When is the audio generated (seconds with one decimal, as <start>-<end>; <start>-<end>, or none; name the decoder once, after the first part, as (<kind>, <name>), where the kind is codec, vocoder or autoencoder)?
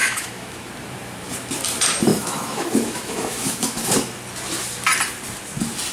0.0-0.7 (autoencoder, DAC-VAE); 2.1-3.9